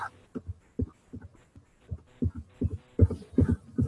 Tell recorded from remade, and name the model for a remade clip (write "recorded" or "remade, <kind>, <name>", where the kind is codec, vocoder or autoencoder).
recorded